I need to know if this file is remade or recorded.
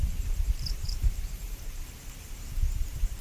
remade